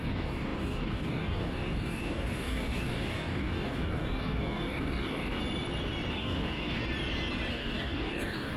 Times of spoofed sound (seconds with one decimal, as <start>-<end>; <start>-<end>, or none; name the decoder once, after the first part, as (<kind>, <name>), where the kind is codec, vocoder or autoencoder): 0.0-5.4 (codec, DAC); 6.1-6.8; 7.5-8.6